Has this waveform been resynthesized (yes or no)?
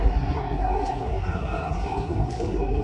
yes